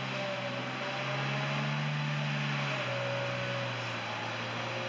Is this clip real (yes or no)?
yes